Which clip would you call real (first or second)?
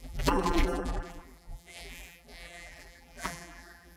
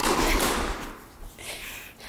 second